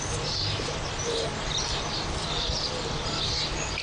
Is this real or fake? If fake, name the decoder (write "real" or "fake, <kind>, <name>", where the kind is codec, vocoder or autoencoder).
real